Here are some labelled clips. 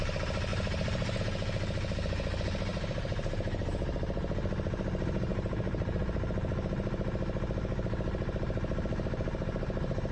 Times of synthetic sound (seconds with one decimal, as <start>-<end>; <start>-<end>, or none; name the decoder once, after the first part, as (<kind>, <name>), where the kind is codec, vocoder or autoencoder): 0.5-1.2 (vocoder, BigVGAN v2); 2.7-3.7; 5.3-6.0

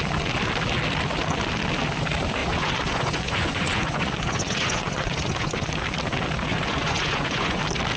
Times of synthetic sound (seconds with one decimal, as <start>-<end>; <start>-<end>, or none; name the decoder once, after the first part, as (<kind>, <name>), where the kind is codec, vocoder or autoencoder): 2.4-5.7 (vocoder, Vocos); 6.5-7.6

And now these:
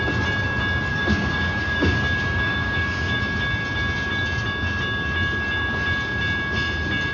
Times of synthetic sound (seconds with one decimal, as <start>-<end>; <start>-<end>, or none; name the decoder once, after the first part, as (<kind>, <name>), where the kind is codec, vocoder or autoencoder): 0.9-3.2 (codec, DAC)

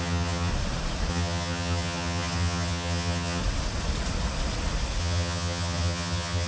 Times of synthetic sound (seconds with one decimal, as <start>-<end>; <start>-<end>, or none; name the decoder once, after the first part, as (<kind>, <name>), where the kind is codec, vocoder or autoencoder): 0.0-0.5 (vocoder, HiFi-GAN); 1.1-3.4; 5.0-6.5